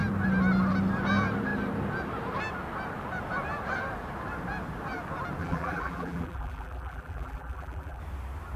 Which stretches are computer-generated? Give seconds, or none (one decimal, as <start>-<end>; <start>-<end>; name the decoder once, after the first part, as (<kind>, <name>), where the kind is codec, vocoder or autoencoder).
5.4-8.0 (vocoder, BigVGAN v2)

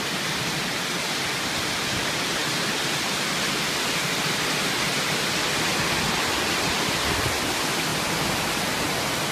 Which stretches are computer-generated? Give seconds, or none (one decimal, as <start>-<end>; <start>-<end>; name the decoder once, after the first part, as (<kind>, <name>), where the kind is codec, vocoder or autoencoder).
none